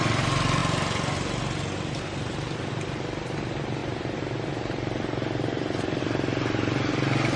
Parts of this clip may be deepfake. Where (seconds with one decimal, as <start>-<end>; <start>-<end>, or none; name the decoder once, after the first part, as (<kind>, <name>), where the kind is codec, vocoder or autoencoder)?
none